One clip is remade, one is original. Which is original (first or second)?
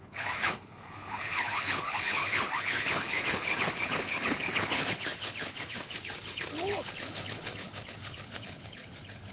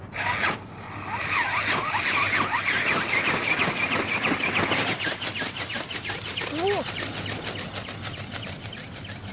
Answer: second